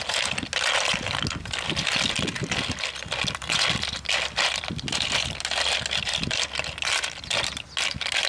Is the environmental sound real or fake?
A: real